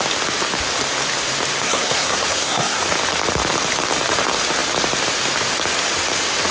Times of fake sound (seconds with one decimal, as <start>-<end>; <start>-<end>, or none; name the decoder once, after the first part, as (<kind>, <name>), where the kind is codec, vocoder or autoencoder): 1.6-2.8 (codec, SNAC)